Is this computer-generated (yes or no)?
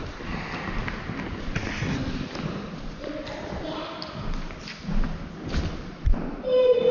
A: no